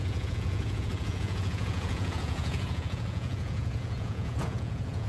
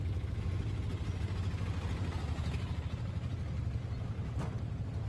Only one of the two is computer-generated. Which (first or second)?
first